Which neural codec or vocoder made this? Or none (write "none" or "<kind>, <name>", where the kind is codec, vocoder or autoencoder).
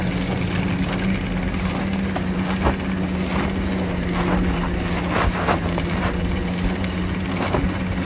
none